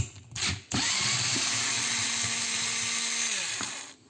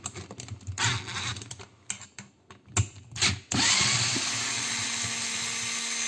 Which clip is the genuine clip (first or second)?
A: second